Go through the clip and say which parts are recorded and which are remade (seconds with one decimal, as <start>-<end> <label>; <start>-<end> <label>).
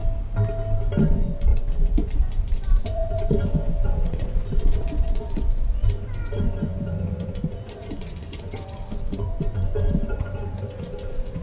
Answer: 0.0-1.0 recorded; 1.0-11.4 remade